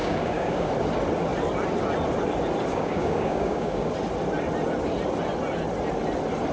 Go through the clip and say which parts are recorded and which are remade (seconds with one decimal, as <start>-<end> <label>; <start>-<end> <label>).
0.0-0.7 remade; 0.7-2.7 recorded; 2.7-3.9 remade; 3.9-6.5 recorded